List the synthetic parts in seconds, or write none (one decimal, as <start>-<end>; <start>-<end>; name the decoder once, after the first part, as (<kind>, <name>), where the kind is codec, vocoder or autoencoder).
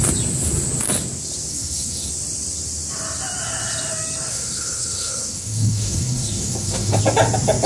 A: 1.5-2.1 (codec, SNAC); 4.3-7.0